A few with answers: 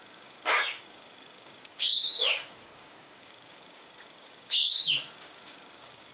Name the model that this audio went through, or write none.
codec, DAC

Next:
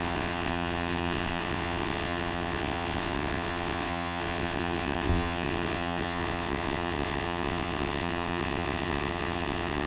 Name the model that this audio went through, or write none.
vocoder, WaveNeXt